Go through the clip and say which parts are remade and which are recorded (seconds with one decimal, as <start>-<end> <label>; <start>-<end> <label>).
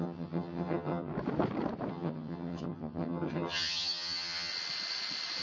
0.0-1.1 remade; 1.1-1.9 recorded; 1.9-4.5 remade; 4.5-5.4 recorded